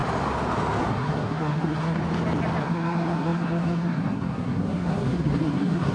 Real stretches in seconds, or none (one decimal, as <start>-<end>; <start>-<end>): 0.0-0.8; 2.0-2.6